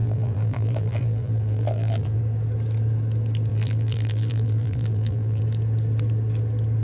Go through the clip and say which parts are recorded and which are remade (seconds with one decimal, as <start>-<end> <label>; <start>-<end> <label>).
0.0-2.2 remade; 2.2-3.5 recorded; 3.5-5.4 remade; 5.4-6.8 recorded